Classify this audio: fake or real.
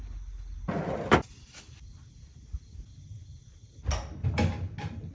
real